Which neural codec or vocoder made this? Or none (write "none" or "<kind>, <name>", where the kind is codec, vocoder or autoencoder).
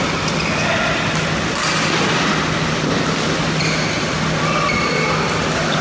none